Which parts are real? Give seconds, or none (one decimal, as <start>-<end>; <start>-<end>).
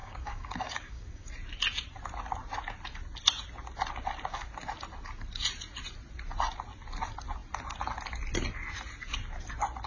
1.3-9.9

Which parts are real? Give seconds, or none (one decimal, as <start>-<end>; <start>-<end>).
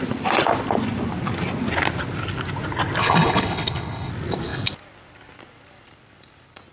0.0-3.0; 4.1-6.7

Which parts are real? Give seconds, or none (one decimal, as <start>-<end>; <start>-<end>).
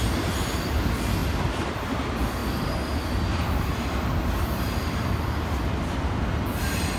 0.0-7.0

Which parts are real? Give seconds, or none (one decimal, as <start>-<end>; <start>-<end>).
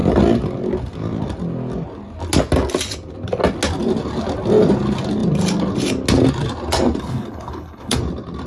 0.0-7.0; 8.0-8.5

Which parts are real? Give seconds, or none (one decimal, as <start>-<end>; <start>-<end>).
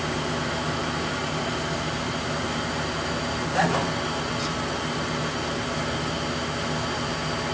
0.0-7.5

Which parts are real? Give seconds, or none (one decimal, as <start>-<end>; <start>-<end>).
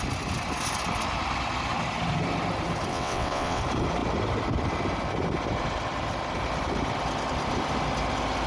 0.0-2.9; 3.6-8.5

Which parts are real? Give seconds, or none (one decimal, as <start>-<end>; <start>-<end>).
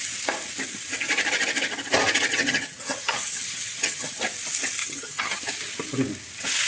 0.0-2.3; 4.2-4.8; 5.4-6.7